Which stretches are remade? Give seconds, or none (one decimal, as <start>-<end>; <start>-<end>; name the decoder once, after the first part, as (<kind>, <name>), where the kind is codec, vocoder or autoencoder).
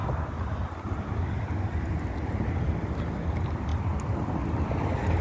none